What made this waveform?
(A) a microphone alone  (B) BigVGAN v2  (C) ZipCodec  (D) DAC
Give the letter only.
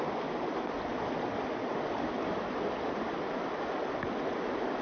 A